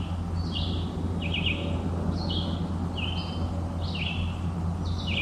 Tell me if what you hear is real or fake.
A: real